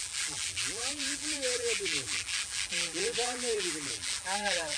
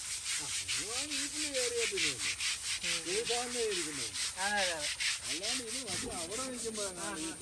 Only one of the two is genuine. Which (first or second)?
second